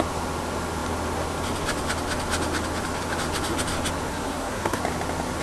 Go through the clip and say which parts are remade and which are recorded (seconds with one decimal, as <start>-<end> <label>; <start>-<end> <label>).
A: 0.0-4.1 recorded; 4.1-4.8 remade; 4.8-5.4 recorded